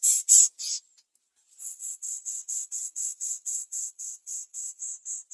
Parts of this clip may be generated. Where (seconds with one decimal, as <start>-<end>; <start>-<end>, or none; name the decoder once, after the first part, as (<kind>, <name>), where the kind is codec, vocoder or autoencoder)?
1.6-4.8 (vocoder, WaveNeXt)